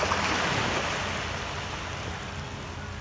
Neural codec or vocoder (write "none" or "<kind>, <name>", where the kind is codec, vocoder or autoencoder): none